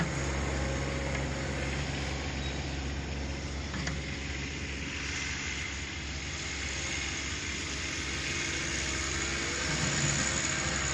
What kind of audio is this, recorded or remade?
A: recorded